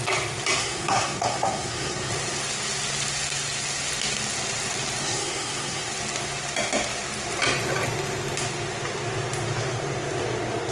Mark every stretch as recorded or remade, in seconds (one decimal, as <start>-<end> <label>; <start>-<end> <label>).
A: 0.0-0.6 recorded; 0.6-2.1 remade; 2.1-5.0 recorded; 5.0-5.9 remade; 5.9-10.7 recorded